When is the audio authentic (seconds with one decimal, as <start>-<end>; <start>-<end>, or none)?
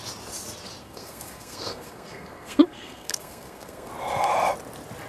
0.0-0.8; 3.9-5.1